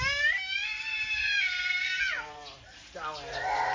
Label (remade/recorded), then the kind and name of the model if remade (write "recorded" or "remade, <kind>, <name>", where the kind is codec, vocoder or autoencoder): recorded